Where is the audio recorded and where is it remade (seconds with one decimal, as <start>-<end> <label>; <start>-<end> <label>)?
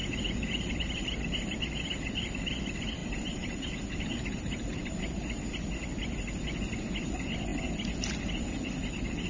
0.0-0.7 remade; 0.7-3.0 recorded; 3.0-5.0 remade; 5.0-9.3 recorded